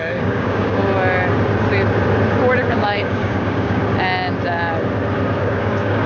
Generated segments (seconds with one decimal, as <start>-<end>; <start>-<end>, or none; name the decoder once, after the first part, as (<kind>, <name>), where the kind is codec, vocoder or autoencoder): 0.0-0.8 (codec, DAC); 2.7-3.8; 5.4-6.1